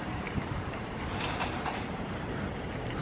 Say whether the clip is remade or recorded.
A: remade